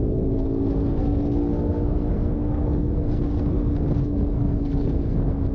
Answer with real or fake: fake